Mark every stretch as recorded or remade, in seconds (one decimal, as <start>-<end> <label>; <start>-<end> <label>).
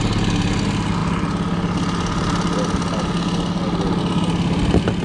0.0-5.0 recorded